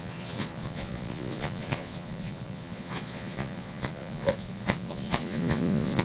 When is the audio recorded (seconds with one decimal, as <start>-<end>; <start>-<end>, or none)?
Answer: none